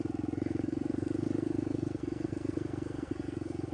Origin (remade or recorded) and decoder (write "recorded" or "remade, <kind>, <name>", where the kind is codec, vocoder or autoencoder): remade, codec, SNAC